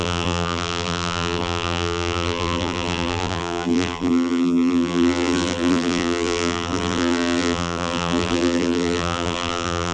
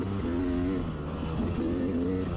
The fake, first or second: first